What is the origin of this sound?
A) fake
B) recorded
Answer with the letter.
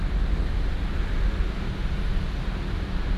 B